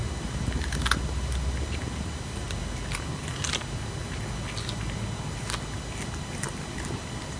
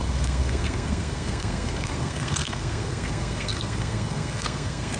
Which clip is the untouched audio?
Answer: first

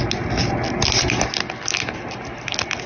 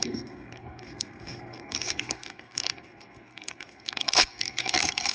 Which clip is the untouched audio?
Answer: first